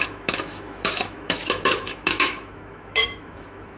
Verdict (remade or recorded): remade